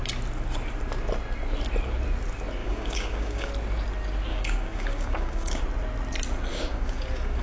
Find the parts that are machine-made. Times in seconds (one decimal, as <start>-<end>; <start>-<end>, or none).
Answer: 2.6-3.5; 4.3-5.6; 6.5-7.4